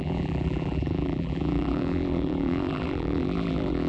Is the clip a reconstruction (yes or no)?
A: yes